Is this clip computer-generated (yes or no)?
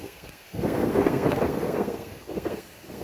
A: yes